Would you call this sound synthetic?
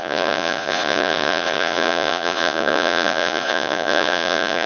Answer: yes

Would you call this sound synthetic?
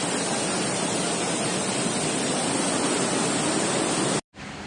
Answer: no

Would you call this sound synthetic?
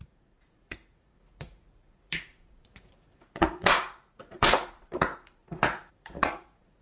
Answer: yes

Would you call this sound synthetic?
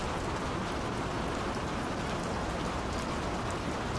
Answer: no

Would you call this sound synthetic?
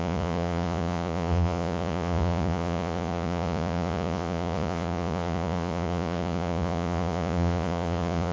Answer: yes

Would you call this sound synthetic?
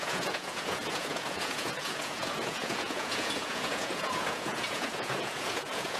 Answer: yes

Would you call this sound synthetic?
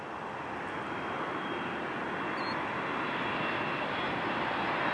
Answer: no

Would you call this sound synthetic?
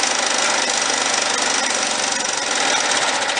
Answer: no